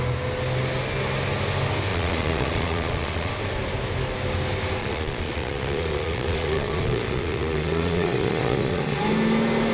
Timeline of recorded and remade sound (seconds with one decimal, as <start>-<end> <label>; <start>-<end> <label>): 0.0-1.9 recorded; 1.9-3.3 remade; 3.3-4.8 recorded; 4.8-9.0 remade; 9.0-9.7 recorded